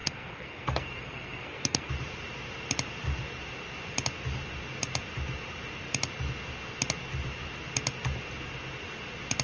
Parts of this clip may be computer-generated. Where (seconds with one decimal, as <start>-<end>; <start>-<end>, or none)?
0.0-1.9